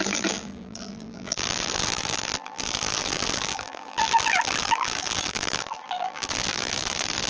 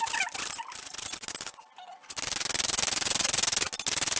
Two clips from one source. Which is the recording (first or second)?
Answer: second